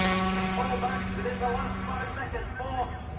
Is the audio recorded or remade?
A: recorded